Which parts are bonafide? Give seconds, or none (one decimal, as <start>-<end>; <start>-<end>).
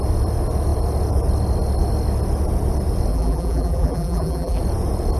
0.0-3.1; 4.6-5.2